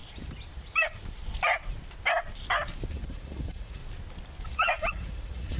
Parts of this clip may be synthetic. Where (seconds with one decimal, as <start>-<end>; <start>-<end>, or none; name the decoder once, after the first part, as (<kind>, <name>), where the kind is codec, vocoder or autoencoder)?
2.9-3.8 (vocoder, Vocos); 4.5-5.6